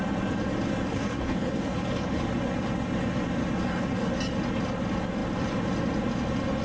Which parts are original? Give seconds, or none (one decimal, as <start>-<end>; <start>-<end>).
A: 0.0-0.9; 2.2-3.6; 4.1-6.6